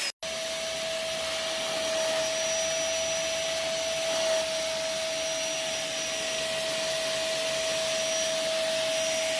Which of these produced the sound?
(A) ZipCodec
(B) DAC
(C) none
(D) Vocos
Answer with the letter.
C